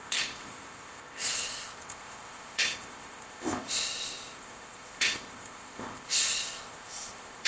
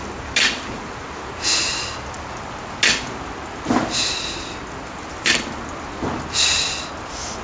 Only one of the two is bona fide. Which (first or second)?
second